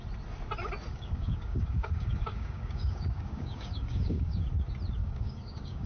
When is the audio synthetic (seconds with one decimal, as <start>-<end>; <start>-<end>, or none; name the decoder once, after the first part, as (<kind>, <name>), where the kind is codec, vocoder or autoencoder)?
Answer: 0.9-4.4 (codec, DAC); 5.0-5.9